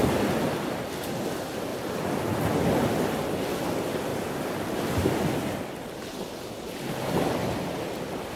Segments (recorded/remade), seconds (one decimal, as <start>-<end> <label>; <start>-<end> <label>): 0.0-1.7 recorded; 1.7-2.2 remade; 2.2-8.4 recorded